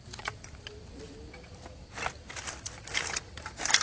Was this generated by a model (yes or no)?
no